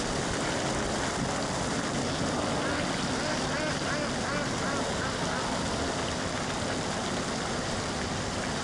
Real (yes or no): yes